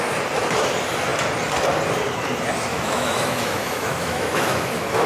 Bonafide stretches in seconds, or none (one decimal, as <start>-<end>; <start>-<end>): 0.0-2.7